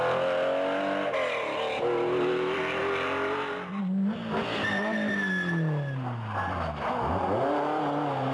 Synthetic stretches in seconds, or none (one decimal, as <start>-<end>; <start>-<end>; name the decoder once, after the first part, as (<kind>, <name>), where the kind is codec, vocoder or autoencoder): none